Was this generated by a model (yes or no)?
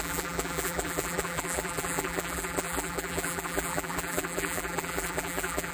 yes